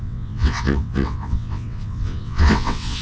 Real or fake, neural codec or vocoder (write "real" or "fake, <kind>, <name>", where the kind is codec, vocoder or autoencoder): fake, vocoder, WaveNeXt